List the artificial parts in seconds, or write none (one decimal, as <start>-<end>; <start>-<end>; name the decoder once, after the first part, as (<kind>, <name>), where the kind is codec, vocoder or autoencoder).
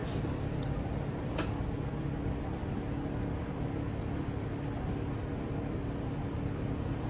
none